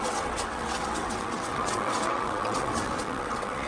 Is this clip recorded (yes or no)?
no